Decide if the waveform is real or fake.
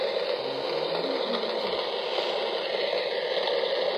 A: real